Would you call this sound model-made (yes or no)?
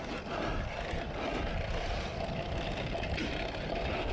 no